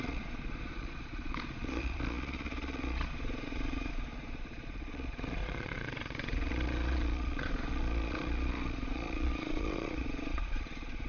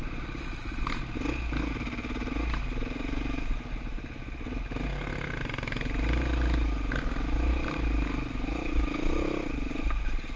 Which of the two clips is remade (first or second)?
first